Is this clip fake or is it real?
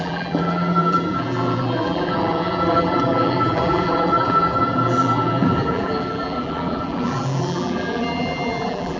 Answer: fake